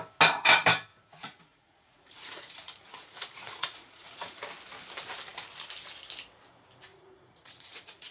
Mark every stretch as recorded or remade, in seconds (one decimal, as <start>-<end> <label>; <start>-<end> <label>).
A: 0.0-0.9 recorded; 0.9-4.4 remade; 4.4-6.9 recorded; 6.9-8.1 remade